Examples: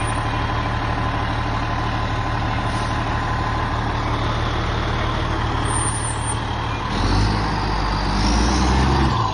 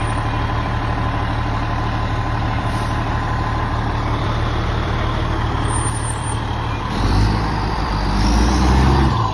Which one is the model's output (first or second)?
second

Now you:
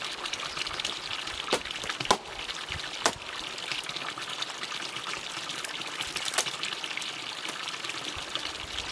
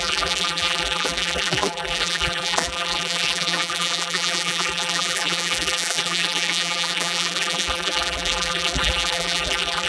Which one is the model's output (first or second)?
second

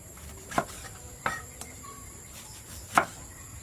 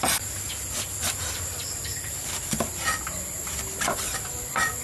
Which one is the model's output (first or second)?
first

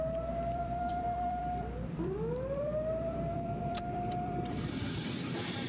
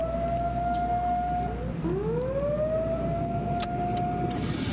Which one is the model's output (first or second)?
first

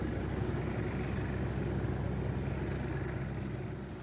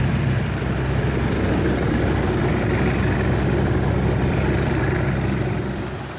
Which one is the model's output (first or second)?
second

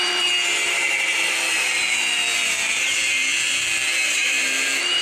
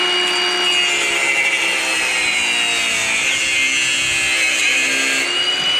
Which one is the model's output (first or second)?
first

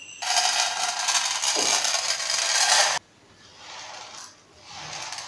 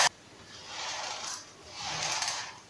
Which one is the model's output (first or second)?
second